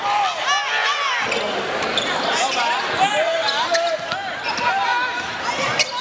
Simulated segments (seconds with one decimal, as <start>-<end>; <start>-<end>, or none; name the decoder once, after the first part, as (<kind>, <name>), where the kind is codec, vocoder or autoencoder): none